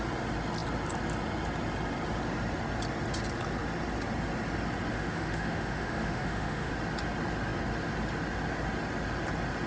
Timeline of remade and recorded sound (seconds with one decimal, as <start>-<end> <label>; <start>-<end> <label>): 0.0-4.9 recorded; 4.9-6.7 remade; 6.7-9.7 recorded